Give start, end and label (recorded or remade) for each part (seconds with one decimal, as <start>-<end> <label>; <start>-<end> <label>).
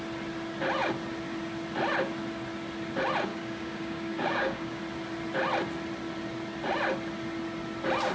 0.0-3.3 recorded; 3.3-4.8 remade; 4.8-8.1 recorded